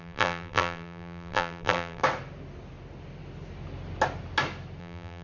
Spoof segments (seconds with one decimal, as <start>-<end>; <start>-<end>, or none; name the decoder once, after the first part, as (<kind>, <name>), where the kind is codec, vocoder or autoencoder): 0.0-2.0 (vocoder, BigVGAN v2); 4.8-5.2